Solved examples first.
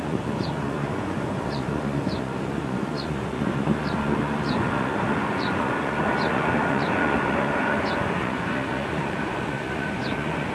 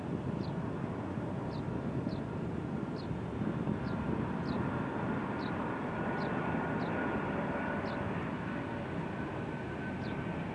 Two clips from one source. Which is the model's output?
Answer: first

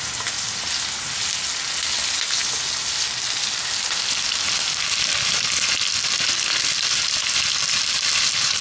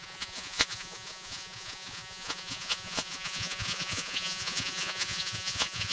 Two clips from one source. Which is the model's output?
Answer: second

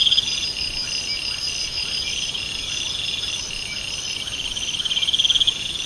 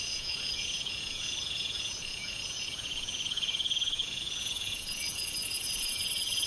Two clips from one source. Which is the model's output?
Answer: second